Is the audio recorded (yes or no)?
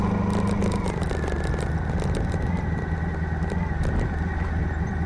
yes